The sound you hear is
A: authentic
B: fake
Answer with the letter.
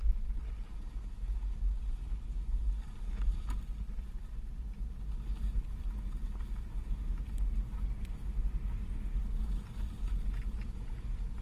A